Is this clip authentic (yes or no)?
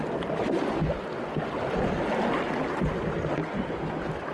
yes